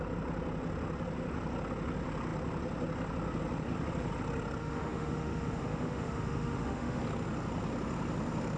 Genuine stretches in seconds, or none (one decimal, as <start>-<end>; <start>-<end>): 0.0-4.6; 7.0-8.6

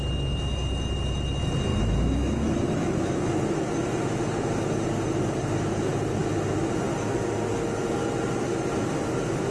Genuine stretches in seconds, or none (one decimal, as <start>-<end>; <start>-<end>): 0.0-1.7; 3.2-9.5